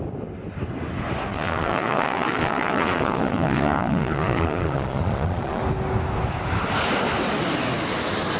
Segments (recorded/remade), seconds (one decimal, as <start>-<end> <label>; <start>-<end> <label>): 0.0-1.3 recorded; 1.3-5.6 remade; 5.6-8.4 recorded